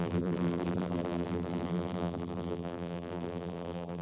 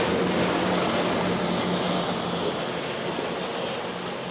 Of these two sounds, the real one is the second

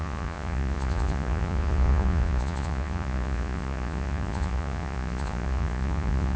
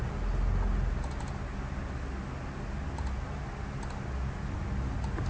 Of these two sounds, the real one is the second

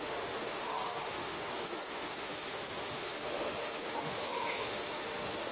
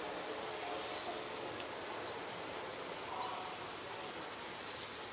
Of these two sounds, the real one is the second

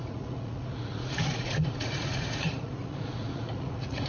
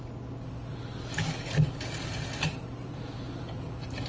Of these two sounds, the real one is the second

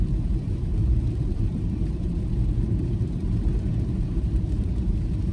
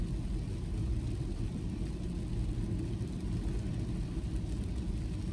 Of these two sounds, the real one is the second